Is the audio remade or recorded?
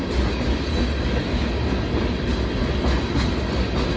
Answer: recorded